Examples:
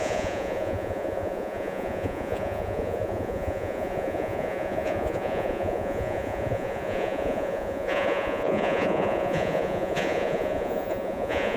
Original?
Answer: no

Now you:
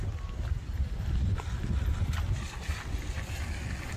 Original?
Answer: yes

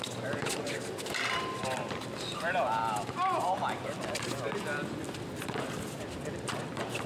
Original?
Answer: no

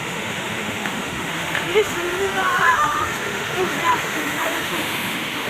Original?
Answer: no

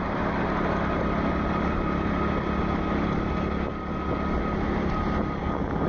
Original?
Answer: yes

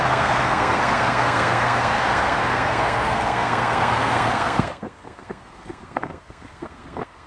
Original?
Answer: no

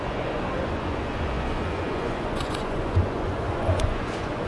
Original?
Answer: no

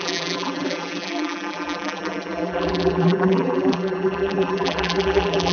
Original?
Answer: no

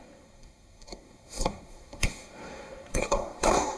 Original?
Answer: no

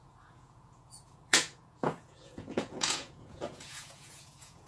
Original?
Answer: no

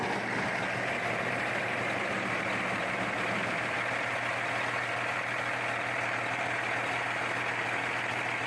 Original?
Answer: yes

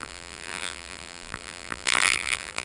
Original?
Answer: no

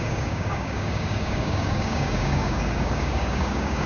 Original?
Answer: no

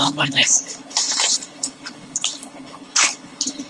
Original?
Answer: no